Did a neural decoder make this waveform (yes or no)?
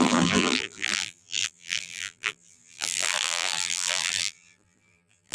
yes